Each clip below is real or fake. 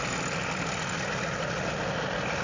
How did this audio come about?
real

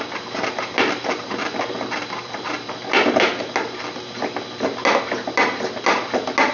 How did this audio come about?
real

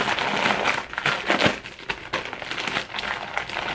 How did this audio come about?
real